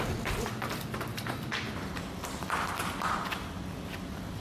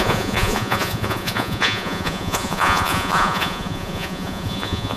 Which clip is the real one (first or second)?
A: first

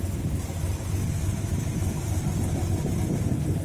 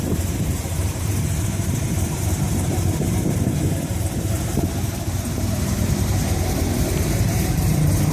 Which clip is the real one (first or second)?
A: first